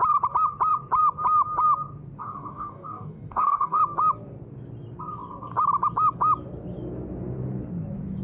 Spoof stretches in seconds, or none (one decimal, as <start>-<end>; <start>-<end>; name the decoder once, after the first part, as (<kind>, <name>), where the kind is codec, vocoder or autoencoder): 2.2-3.8 (codec, DAC)